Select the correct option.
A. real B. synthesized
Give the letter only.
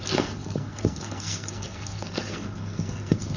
B